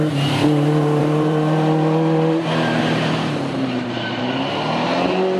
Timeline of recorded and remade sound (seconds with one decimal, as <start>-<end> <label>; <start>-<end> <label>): 0.0-1.0 recorded; 1.0-4.2 remade; 4.2-5.4 recorded